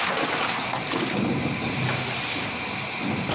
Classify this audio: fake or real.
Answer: real